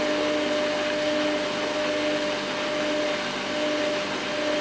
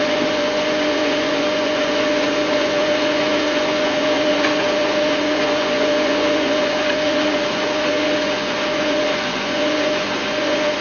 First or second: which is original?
first